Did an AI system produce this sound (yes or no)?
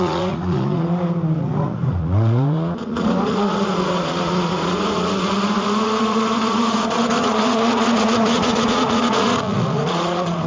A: yes